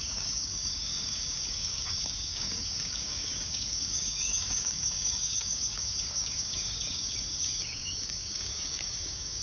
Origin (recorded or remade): remade